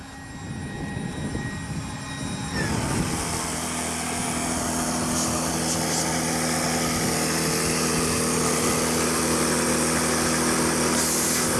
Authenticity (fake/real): real